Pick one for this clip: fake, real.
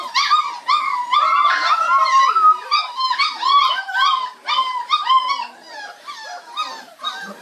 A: fake